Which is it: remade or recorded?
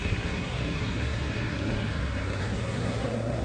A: remade